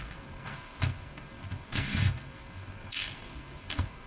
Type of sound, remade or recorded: remade